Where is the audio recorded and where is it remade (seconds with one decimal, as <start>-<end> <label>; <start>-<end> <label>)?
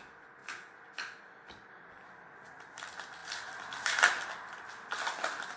0.0-5.6 recorded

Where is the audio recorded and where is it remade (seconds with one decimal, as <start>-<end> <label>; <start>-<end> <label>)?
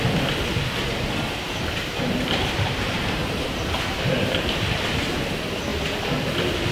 0.0-1.5 recorded; 1.5-5.0 remade; 5.0-6.7 recorded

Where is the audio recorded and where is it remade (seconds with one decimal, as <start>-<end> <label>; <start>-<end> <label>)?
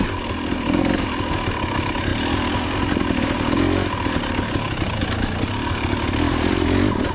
0.0-7.1 recorded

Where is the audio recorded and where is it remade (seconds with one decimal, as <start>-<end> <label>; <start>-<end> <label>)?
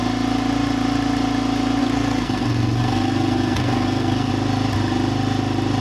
0.0-1.8 recorded; 1.8-4.3 remade; 4.3-5.8 recorded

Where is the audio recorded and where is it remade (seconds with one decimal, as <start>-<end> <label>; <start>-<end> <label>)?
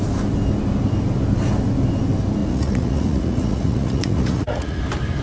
0.0-2.4 recorded; 2.4-4.8 remade; 4.8-5.2 recorded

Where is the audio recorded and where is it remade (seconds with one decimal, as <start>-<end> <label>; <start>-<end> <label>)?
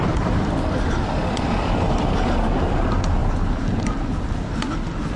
0.0-5.2 recorded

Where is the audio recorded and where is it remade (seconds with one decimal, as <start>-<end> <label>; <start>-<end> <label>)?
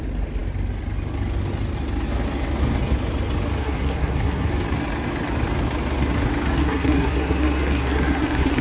0.0-3.6 recorded; 3.6-4.5 remade; 4.5-6.6 recorded; 6.6-8.6 remade